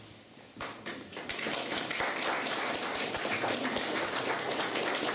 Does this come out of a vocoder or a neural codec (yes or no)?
no